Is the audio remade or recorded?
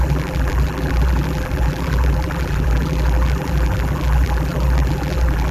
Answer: remade